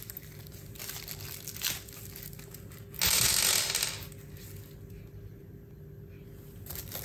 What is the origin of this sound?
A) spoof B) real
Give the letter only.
B